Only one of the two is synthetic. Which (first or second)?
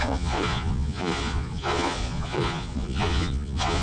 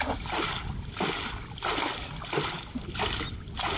first